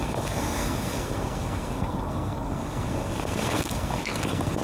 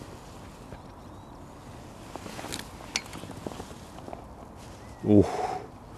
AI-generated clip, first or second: first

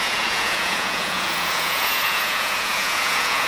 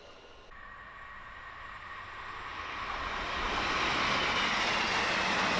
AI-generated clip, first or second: first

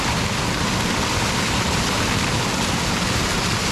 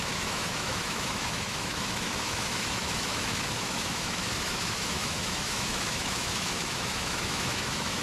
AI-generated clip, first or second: second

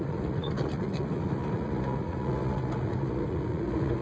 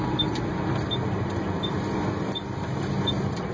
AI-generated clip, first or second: first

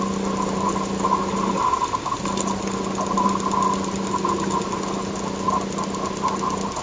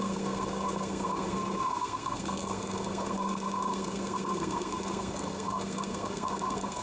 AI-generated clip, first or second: second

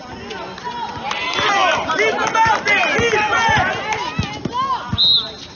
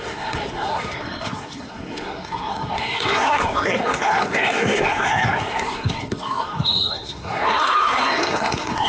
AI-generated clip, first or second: second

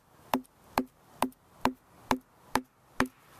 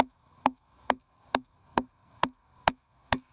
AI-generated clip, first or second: second